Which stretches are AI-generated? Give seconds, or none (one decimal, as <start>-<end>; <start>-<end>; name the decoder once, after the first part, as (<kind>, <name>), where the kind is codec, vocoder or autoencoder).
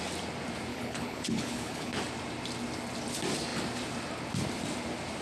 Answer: 0.7-2.0 (codec, HILCodec)